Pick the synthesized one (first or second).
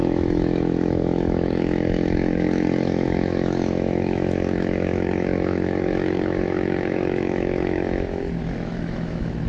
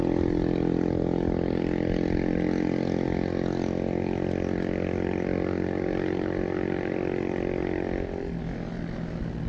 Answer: first